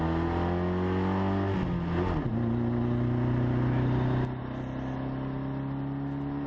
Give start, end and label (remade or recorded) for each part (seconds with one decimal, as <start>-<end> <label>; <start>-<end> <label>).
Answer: 0.0-6.5 recorded